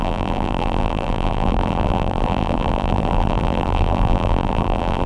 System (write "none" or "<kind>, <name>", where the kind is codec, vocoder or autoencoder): vocoder, BigVGAN v2